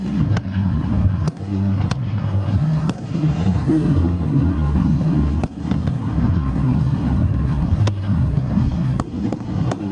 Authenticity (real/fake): fake